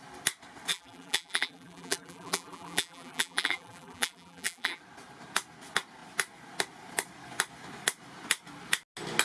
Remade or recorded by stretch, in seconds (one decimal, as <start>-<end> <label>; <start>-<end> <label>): 0.0-0.7 recorded; 0.7-4.8 remade; 4.8-9.2 recorded